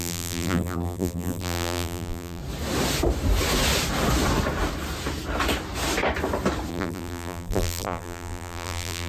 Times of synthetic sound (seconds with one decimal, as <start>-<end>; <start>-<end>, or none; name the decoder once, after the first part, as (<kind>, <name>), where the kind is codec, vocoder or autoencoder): 0.0-2.4 (vocoder, BigVGAN v2); 6.7-9.1